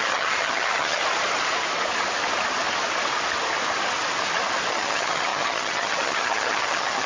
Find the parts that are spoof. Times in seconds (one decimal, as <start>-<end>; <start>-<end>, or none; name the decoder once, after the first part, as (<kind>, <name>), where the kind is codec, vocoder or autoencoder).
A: 0.0-1.0 (vocoder, HiFi-GAN); 4.7-7.1